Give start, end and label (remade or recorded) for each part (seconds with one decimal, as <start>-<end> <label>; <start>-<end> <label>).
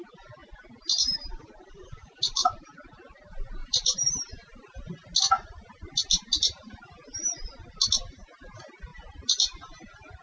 0.0-3.6 recorded; 3.6-4.8 remade; 4.8-10.2 recorded